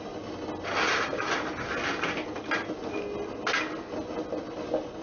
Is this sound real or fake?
real